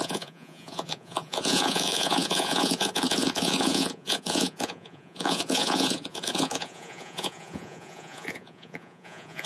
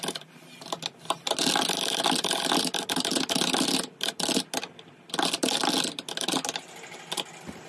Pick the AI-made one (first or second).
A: first